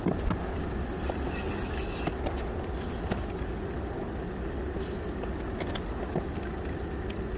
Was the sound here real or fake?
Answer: real